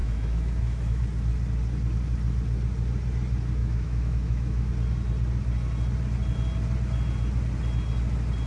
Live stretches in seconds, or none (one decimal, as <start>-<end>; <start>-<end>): 1.0-3.6; 4.7-8.5